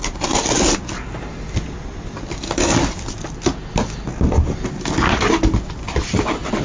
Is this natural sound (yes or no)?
yes